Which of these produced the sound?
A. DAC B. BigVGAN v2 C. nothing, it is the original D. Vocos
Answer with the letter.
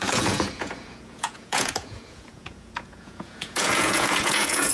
D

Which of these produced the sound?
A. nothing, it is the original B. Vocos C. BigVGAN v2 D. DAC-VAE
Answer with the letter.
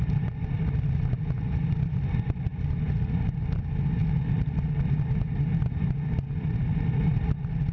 A